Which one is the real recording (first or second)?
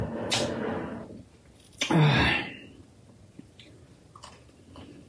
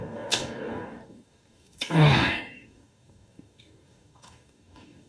first